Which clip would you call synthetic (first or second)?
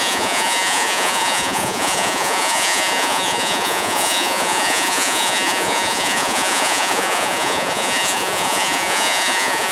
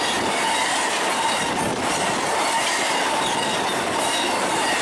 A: first